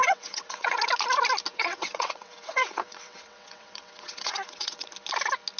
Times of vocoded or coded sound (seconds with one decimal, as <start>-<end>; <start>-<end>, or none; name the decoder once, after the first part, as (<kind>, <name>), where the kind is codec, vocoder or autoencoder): 0.0-0.9 (vocoder, WaveNeXt); 1.5-4.9

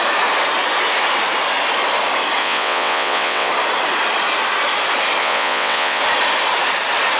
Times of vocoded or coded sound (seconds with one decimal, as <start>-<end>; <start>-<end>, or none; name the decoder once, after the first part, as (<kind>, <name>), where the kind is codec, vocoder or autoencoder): 2.4-3.5 (vocoder, WaveNeXt); 5.2-6.0

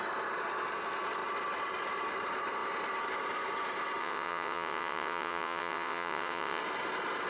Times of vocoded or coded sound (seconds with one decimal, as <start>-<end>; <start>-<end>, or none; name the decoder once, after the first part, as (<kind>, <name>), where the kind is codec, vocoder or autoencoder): 4.0-6.6 (vocoder, WaveNeXt)

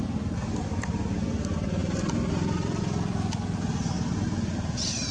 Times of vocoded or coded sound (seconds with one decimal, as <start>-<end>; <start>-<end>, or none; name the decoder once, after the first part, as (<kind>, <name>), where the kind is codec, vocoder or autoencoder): none

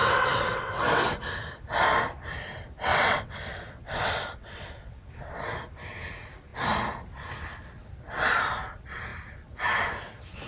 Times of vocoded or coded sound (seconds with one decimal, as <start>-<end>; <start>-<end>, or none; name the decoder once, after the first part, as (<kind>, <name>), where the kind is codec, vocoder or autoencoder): 0.0-1.2 (vocoder, WaveNeXt); 2.9-5.1

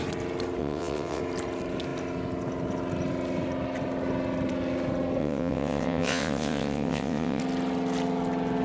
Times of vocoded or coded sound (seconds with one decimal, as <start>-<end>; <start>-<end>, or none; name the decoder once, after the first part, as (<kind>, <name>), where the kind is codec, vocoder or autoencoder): 0.6-1.2 (vocoder, WaveNeXt); 5.2-7.4